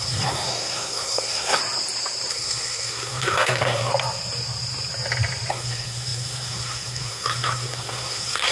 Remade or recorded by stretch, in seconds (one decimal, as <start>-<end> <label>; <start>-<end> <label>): 0.0-1.6 remade; 1.6-2.3 recorded; 2.3-3.9 remade; 3.9-5.5 recorded; 5.5-8.5 remade